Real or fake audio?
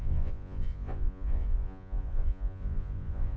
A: fake